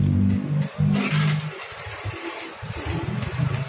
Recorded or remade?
recorded